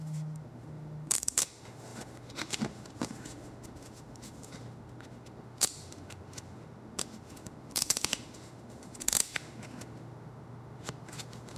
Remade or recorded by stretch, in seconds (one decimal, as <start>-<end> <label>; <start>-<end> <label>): 0.0-11.6 remade